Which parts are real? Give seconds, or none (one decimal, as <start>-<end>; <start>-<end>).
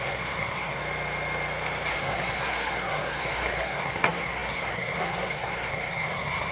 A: 0.8-1.9